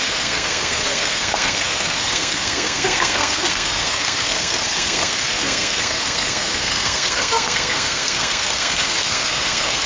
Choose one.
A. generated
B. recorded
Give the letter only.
A